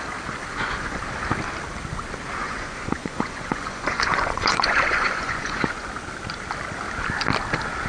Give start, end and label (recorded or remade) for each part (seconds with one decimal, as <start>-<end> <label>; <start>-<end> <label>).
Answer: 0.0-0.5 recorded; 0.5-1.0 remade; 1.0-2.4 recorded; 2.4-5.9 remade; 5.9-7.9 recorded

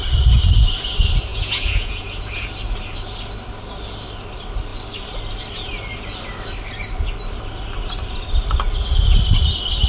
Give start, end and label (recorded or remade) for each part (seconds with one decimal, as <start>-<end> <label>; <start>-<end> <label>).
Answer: 0.0-1.3 recorded; 1.3-2.5 remade; 2.5-9.9 recorded

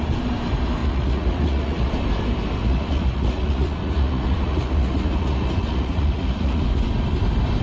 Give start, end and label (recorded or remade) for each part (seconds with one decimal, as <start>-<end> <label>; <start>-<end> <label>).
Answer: 0.0-0.8 recorded; 0.8-1.9 remade; 1.9-2.6 recorded; 2.6-6.6 remade; 6.6-7.6 recorded

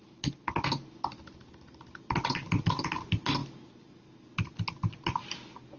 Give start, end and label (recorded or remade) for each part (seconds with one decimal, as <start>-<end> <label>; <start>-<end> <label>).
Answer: 0.0-5.8 recorded

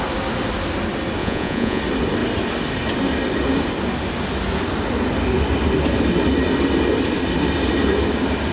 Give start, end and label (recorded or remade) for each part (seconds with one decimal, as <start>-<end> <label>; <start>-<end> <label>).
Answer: 0.0-1.2 recorded; 1.2-1.8 remade; 1.8-8.5 recorded

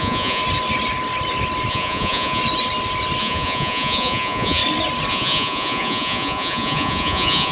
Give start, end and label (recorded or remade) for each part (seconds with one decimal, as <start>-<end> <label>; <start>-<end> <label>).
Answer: 0.0-0.4 remade; 0.4-1.7 recorded; 1.7-2.4 remade; 2.4-3.2 recorded; 3.2-4.6 remade; 4.6-5.1 recorded; 5.1-7.5 remade